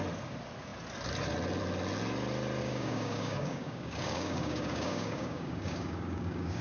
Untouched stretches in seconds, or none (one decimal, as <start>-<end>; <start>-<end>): 0.0-2.6